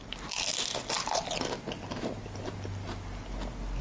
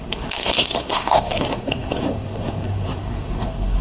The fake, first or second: second